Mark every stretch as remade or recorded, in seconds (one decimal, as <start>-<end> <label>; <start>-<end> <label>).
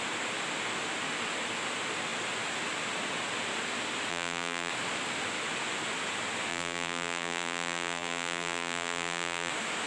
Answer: 0.0-4.1 recorded; 4.1-4.7 remade; 4.7-6.5 recorded; 6.5-9.5 remade; 9.5-9.9 recorded